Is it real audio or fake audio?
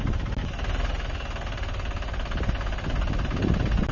real